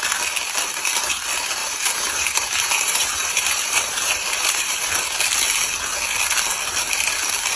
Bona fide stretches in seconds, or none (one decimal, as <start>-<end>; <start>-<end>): 0.0-1.6; 4.9-7.6